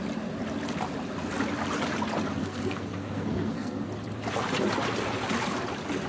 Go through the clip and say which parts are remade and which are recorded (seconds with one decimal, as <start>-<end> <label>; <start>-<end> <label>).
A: 0.0-2.4 recorded; 2.4-3.9 remade; 3.9-6.1 recorded